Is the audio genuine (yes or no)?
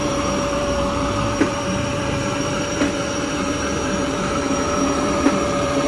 no